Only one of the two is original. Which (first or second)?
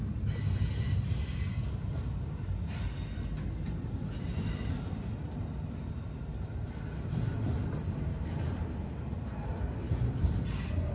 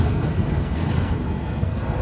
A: first